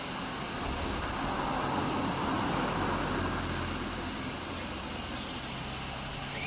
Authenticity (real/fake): real